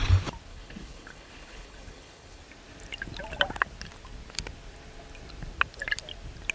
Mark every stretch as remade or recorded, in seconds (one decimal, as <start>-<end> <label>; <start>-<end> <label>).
0.0-0.5 recorded; 0.5-2.4 remade; 2.4-6.5 recorded

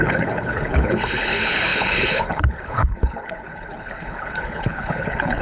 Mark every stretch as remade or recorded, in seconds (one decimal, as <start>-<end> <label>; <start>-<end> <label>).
0.0-5.4 remade

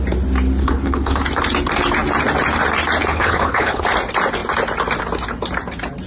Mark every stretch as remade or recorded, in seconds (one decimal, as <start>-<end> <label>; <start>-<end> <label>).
0.0-0.6 recorded; 0.6-1.2 remade; 1.2-3.1 recorded; 3.1-3.8 remade; 3.8-6.1 recorded

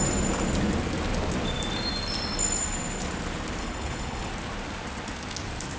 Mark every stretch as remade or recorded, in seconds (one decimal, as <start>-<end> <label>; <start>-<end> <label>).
0.0-3.6 recorded; 3.6-4.3 remade; 4.3-5.8 recorded

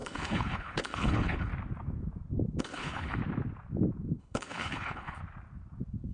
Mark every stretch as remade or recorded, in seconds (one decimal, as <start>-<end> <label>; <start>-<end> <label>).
0.0-1.5 remade; 1.5-2.6 recorded; 2.6-3.2 remade; 3.2-4.2 recorded; 4.2-5.2 remade; 5.2-6.1 recorded